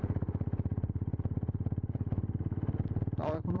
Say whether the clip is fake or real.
fake